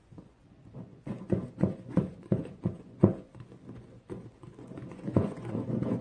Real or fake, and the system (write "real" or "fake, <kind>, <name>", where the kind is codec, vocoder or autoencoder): fake, vocoder, Vocos